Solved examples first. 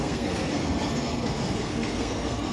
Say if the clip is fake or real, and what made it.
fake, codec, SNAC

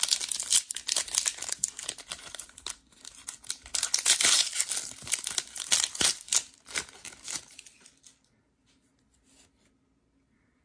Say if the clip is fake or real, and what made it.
real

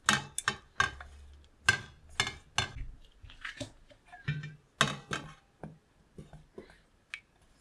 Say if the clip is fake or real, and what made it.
real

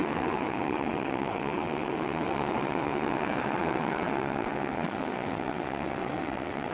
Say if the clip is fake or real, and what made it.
fake, vocoder, WaveNeXt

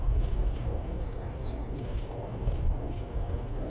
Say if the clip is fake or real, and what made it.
fake, codec, DAC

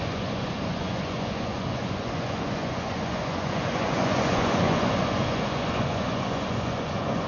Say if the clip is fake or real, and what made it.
fake, vocoder, Vocos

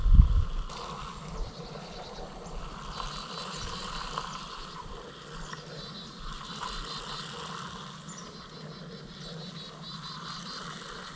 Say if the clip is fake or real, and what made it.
real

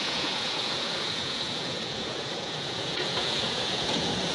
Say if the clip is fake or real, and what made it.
fake, vocoder, Vocos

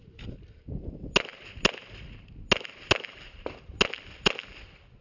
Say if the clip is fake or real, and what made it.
real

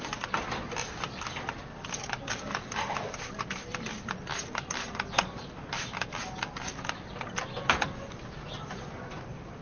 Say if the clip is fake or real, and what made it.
real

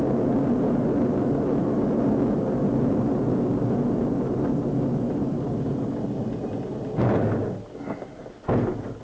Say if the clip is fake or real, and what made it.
real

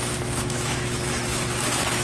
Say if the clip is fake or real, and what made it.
fake, autoencoder, DAC-VAE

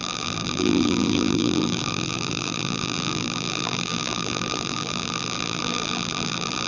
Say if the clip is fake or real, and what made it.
fake, vocoder, BigVGAN v2